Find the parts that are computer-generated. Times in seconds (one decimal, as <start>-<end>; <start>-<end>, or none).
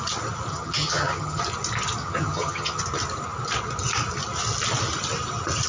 0.5-1.4; 2.0-2.8